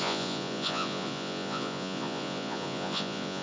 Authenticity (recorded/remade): remade